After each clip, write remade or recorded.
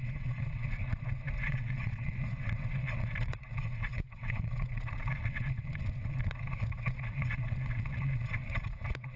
remade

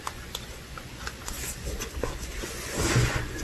remade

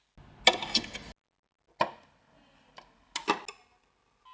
recorded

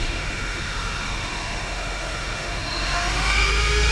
remade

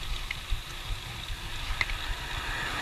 recorded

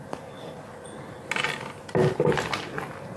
recorded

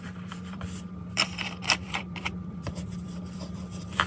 remade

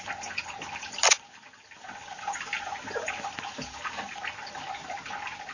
recorded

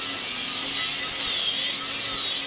recorded